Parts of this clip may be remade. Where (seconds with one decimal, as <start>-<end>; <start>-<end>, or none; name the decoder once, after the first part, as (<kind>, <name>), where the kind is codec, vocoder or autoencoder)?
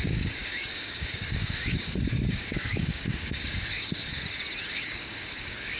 0.0-4.1 (codec, DAC); 4.7-5.8